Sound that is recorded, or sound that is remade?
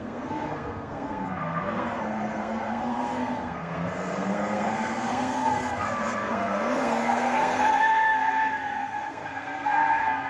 remade